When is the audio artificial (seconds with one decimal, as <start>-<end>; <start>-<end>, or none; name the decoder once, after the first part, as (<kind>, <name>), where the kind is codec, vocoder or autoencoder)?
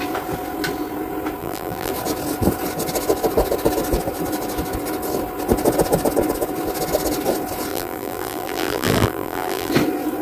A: 1.4-1.9 (vocoder, BigVGAN v2); 7.7-9.7